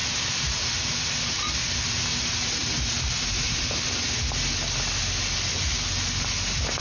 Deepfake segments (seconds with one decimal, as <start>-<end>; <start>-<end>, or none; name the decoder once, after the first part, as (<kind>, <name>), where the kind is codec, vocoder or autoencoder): none

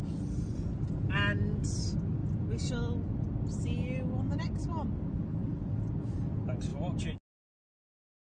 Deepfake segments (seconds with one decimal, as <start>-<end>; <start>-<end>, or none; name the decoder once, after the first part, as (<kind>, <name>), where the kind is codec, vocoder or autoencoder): none

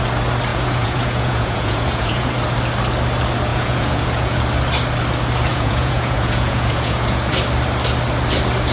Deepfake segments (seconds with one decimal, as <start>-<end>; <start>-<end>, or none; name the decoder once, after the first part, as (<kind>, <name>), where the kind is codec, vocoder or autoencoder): 0.5-2.3 (vocoder, Vocos); 3.5-4.4; 5.5-7.3

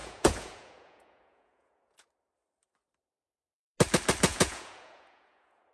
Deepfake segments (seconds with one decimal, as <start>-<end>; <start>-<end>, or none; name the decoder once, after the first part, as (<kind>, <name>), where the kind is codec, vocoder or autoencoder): 0.0-2.1 (vocoder, Vocos); 4.3-5.7